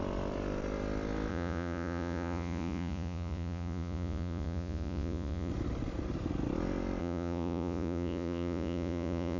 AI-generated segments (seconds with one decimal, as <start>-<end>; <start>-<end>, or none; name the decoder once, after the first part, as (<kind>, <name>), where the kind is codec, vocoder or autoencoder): 1.3-5.5 (vocoder, Vocos); 7.0-9.4